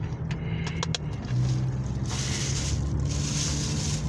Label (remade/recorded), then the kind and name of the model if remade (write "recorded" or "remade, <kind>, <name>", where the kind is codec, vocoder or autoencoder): recorded